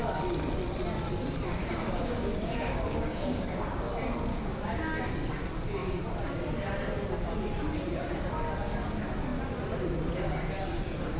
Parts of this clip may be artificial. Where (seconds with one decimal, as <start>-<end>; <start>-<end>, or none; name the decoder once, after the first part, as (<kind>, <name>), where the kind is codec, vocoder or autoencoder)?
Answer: 1.6-3.9 (codec, DAC); 4.3-5.1